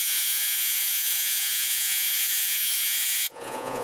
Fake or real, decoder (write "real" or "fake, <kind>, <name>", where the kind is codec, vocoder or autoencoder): fake, vocoder, Vocos